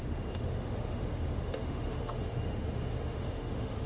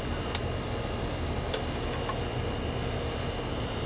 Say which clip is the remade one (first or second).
first